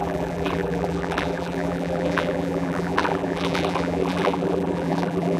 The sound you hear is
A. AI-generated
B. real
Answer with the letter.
A